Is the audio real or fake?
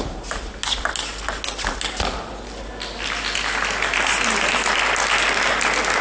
real